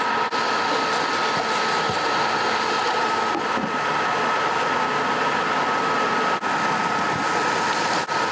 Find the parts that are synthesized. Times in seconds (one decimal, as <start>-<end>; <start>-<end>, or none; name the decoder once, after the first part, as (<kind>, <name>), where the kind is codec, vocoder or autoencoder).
none